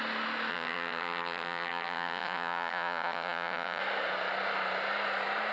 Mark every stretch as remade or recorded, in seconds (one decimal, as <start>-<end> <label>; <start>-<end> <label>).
0.0-0.5 recorded; 0.5-3.8 remade; 3.8-5.5 recorded